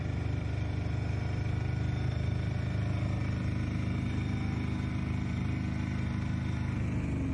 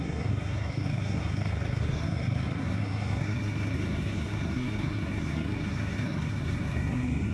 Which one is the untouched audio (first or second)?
first